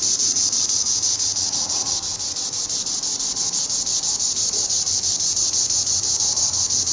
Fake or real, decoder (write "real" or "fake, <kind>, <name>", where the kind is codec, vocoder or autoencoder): real